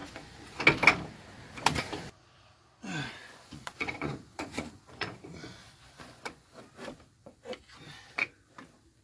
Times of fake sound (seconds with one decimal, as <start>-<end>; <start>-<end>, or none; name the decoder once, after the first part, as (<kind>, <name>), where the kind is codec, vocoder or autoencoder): 0.0-0.6 (vocoder, Vocos); 3.2-6.5; 7.2-8.5